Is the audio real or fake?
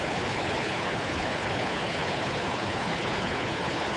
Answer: fake